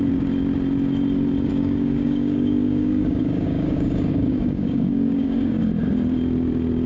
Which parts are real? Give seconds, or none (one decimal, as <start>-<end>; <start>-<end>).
0.0-1.5; 5.6-6.9